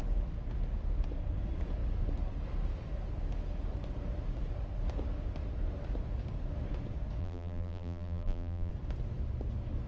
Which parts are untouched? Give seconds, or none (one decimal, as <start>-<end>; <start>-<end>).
0.0-7.2; 8.7-9.9